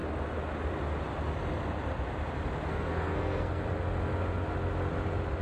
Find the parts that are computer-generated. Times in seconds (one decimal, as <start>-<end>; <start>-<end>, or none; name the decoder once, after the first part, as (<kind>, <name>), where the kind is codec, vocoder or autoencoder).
2.7-3.6 (codec, SNAC)